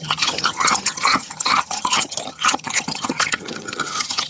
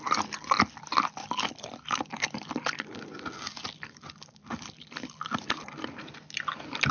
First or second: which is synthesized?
first